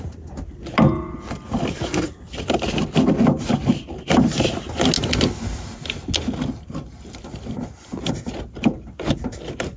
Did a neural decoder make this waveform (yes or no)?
no